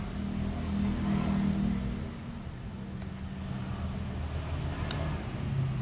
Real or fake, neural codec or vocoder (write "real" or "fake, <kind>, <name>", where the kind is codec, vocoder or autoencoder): real